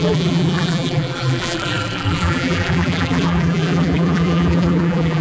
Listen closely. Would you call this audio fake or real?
fake